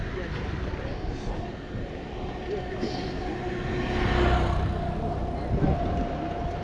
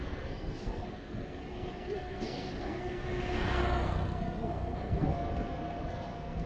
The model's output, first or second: second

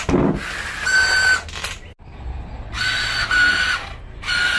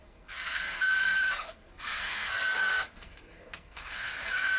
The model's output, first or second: second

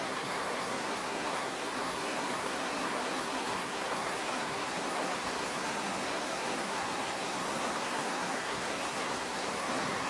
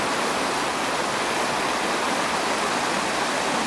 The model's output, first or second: first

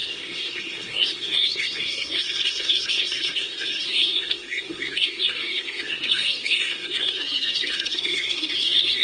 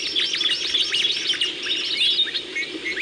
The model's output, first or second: first